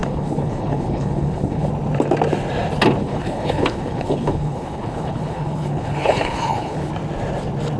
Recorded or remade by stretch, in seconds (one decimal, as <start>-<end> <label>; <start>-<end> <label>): 0.0-1.7 remade; 1.7-3.0 recorded; 3.0-6.9 remade; 6.9-7.8 recorded